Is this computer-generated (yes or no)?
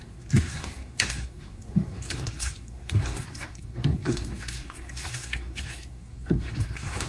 yes